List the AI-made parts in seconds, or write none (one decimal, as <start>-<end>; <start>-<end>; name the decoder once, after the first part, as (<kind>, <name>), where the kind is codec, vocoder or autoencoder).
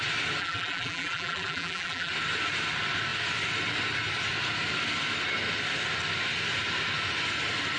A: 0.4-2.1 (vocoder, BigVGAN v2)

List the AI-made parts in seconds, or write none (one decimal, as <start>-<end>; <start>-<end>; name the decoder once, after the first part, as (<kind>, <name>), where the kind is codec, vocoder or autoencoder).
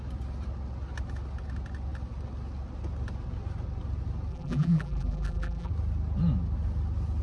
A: 4.3-5.7 (vocoder, BigVGAN v2)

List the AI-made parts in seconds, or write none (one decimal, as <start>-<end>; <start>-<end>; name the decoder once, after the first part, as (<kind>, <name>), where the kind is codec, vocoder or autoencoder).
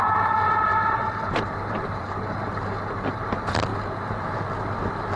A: 0.6-2.2 (vocoder, BigVGAN v2)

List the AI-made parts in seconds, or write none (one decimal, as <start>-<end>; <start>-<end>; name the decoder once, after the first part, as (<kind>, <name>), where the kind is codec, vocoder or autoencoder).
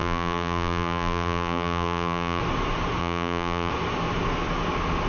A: 0.0-2.4 (vocoder, BigVGAN v2); 3.0-3.7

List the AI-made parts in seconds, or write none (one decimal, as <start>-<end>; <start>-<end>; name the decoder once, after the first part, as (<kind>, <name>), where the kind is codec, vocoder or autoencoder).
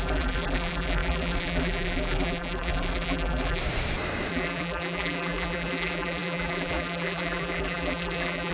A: 0.0-3.6 (vocoder, BigVGAN v2); 4.3-8.5